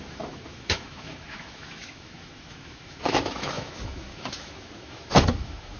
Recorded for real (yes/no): no